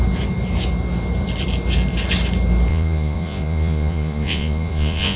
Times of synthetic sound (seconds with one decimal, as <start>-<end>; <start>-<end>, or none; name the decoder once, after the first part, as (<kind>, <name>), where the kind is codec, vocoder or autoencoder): 2.7-5.2 (vocoder, Vocos)